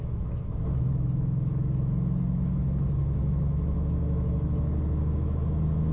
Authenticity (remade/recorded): remade